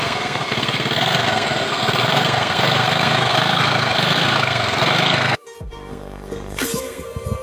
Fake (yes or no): yes